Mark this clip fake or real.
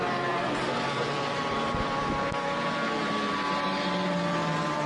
real